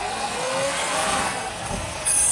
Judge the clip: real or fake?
fake